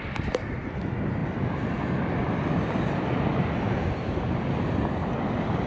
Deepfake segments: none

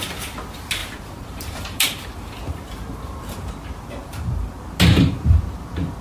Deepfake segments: 0.8-3.5 (vocoder, BigVGAN v2); 4.0-4.6

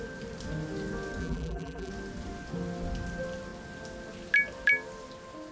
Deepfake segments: 1.2-1.9 (vocoder, BigVGAN v2)

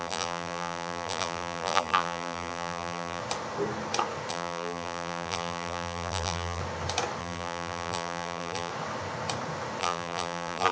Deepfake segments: 0.0-3.2 (vocoder, BigVGAN v2); 4.3-6.6; 7.2-8.7; 9.8-10.7

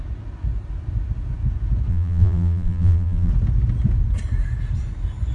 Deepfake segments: 1.9-3.3 (vocoder, BigVGAN v2)

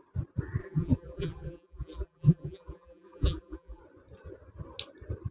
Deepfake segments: 0.6-3.8 (vocoder, BigVGAN v2)

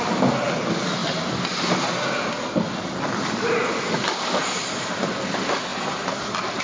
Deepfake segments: 0.0-1.0 (vocoder, BigVGAN v2); 3.7-6.6

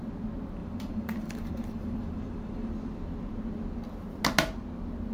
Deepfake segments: 0.6-2.7 (vocoder, BigVGAN v2)